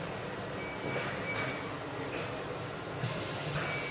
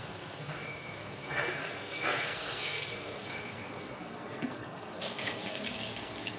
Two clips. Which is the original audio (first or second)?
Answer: first